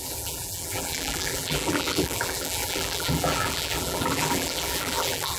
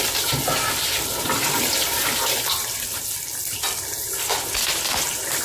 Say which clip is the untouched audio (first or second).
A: second